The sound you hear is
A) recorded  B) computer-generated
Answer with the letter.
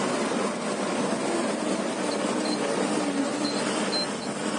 A